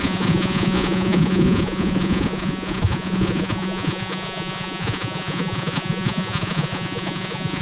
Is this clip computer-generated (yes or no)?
yes